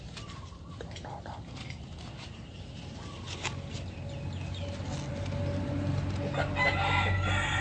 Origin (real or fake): real